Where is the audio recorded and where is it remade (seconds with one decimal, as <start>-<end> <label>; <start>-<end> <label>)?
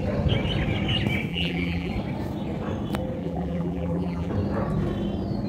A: 0.0-1.3 recorded; 1.3-1.9 remade; 1.9-3.2 recorded; 3.2-4.3 remade; 4.3-5.5 recorded